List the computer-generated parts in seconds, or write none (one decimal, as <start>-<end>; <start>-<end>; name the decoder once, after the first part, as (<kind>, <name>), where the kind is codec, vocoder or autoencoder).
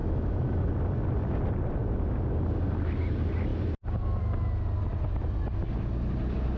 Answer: 0.0-0.7 (autoencoder, DAC-VAE)